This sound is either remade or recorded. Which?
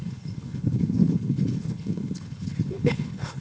remade